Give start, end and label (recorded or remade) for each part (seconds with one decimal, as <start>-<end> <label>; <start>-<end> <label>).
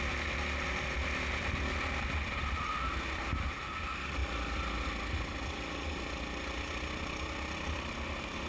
0.0-8.5 recorded